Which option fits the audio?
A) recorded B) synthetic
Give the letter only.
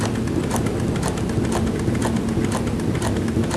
A